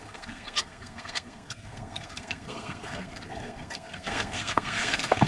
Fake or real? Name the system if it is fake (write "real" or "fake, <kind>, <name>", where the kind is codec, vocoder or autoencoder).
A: fake, codec, SNAC